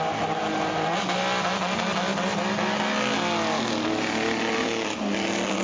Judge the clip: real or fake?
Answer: real